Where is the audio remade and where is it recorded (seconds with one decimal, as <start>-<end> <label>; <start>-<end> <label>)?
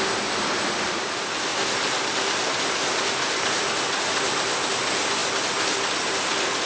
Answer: 0.0-6.7 recorded